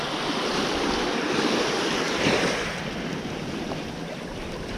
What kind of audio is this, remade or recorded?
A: remade